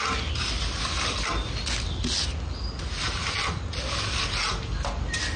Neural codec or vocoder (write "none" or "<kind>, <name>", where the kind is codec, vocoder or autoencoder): none